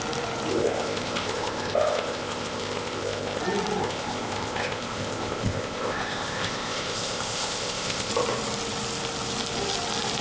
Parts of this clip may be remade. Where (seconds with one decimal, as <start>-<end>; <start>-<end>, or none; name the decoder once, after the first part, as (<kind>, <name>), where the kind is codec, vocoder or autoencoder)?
0.5-3.4 (codec, ZipCodec); 3.8-8.1